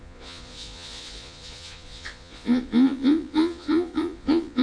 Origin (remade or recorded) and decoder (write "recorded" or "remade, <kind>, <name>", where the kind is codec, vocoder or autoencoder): remade, vocoder, Vocos